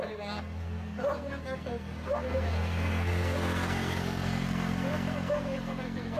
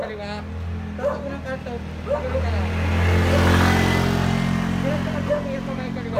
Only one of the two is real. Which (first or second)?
second